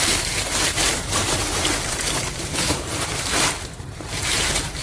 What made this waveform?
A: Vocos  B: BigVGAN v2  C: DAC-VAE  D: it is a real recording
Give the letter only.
B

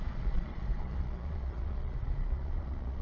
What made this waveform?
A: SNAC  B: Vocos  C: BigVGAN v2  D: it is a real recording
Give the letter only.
B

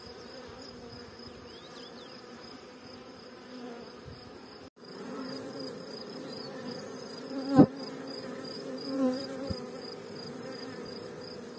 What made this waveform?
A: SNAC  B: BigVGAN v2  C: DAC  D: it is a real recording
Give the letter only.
B